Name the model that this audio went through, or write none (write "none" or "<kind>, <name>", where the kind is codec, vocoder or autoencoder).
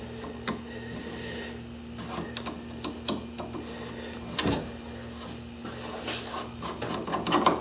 none